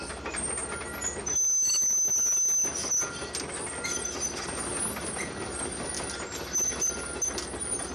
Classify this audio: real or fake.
real